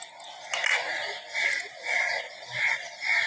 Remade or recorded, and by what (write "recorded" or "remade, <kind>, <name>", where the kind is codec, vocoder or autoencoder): recorded